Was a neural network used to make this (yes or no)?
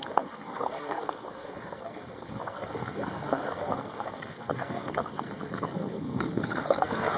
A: yes